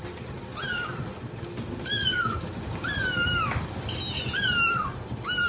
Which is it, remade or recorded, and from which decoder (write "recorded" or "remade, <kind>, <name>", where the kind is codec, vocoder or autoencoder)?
recorded